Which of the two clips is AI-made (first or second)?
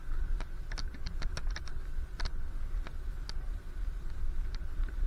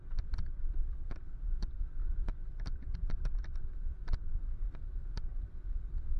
second